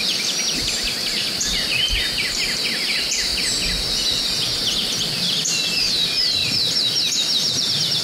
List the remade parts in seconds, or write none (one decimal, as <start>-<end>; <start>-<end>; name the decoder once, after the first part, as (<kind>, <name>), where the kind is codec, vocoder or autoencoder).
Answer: 0.0-3.3 (vocoder, BigVGAN v2); 4.9-6.4; 7.1-8.0